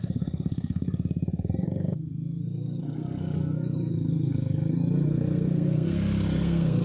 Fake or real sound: fake